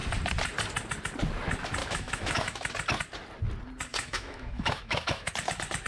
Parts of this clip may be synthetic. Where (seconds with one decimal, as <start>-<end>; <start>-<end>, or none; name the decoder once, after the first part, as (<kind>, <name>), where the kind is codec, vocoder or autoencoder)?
1.8-2.7 (autoencoder, DAC-VAE); 3.9-5.3